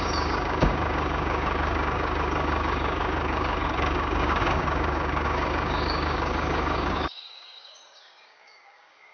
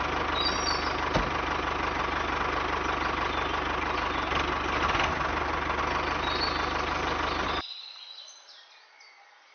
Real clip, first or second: second